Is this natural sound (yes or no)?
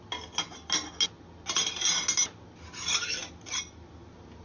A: yes